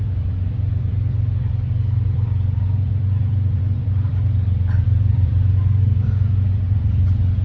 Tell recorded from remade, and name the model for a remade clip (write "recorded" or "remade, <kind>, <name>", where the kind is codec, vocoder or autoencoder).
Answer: remade, vocoder, BigVGAN v2